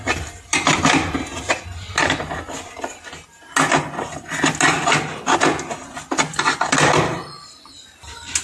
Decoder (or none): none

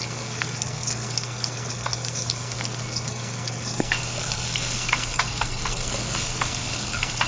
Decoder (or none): codec, SNAC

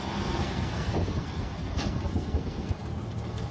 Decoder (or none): codec, SNAC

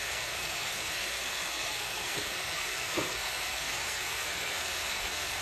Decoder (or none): codec, SNAC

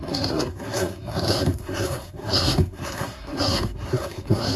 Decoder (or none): codec, SNAC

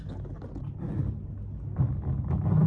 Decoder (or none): none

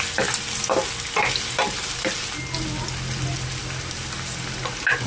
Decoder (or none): none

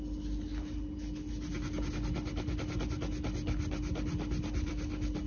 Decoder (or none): none